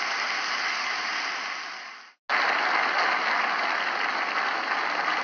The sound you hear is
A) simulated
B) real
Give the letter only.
B